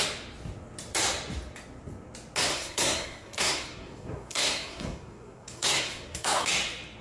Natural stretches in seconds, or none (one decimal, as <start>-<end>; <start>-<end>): 0.0-2.5; 6.5-7.0